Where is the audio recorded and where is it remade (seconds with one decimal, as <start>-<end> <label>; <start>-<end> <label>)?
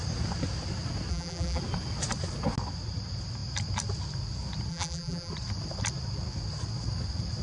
0.0-1.1 recorded; 1.1-1.6 remade; 1.6-4.7 recorded; 4.7-5.3 remade; 5.3-7.4 recorded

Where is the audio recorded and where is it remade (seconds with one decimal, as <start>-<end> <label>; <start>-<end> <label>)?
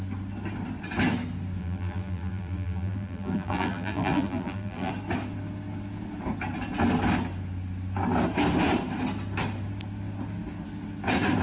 0.0-1.6 recorded; 1.6-4.9 remade; 4.9-11.4 recorded